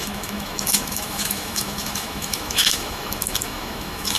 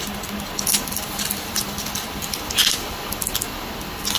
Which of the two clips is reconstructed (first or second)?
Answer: first